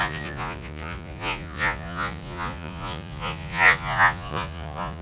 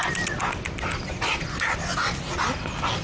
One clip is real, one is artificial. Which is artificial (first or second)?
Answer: first